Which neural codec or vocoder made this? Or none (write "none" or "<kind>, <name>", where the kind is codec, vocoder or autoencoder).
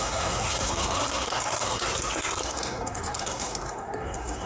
codec, SNAC